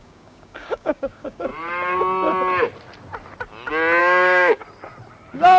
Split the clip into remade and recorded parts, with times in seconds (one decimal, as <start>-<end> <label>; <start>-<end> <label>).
0.0-1.5 remade; 1.5-4.0 recorded; 4.0-4.6 remade; 4.6-5.6 recorded